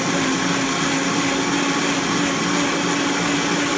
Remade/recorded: recorded